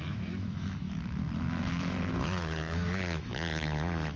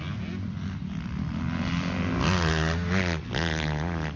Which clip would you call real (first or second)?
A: second